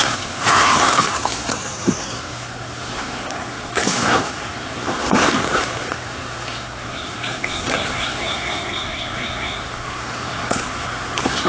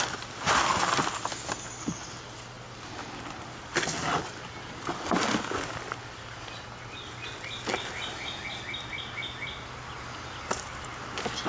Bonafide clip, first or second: second